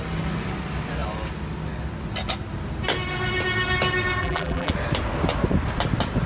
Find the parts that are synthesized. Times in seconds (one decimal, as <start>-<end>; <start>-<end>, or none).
4.2-4.7